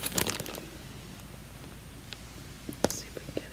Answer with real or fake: real